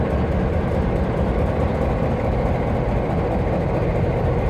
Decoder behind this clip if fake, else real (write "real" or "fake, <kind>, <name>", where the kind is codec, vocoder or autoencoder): real